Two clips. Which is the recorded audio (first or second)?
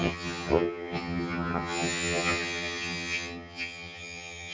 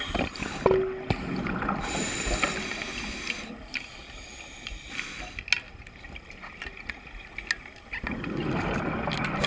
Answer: second